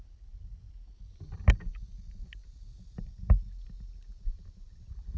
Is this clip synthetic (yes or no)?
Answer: no